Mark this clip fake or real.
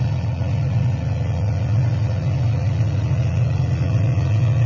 fake